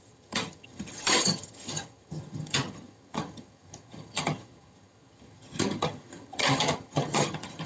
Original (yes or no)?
no